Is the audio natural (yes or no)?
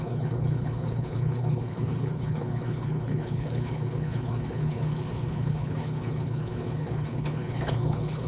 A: no